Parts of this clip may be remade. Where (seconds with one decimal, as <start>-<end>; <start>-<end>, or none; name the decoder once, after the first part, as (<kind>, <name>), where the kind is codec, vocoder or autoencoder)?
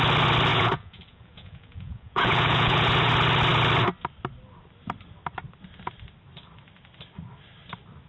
0.5-3.1 (vocoder, Vocos)